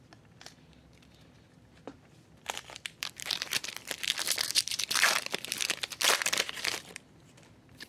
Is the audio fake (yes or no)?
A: yes